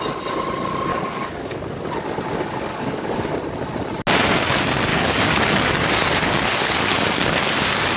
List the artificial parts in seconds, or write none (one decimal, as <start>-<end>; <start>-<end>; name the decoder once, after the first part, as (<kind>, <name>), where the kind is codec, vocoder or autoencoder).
0.9-1.6 (codec, DAC); 2.3-3.3; 4.9-7.4